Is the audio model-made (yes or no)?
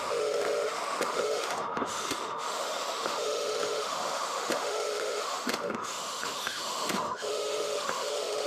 yes